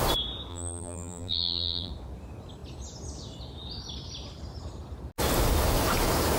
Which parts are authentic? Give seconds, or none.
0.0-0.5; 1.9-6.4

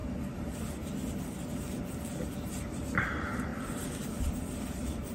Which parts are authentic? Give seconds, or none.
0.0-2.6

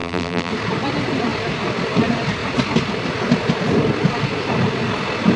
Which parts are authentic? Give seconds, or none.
0.5-5.4